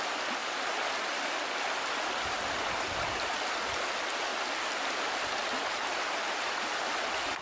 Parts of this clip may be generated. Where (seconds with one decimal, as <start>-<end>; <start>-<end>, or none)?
4.3-6.9